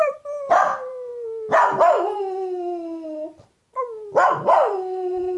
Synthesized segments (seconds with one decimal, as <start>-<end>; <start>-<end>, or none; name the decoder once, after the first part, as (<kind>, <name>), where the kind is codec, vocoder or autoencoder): 0.0-1.1 (vocoder, BigVGAN v2); 4.3-5.4